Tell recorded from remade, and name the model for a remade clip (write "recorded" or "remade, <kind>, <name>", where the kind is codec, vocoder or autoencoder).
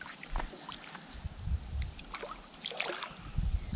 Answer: recorded